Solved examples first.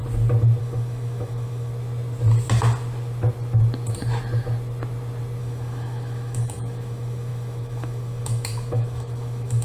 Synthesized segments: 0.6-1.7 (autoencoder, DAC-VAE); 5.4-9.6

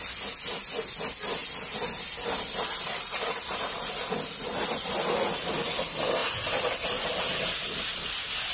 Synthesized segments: none

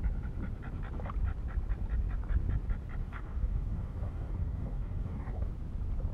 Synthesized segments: 3.0-5.5 (codec, DAC)